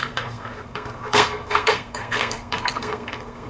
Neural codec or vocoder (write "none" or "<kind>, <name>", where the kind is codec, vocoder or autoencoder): codec, SNAC